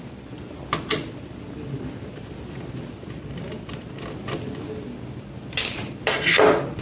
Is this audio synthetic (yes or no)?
no